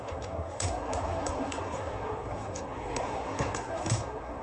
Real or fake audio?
fake